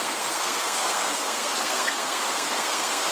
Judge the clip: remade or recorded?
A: remade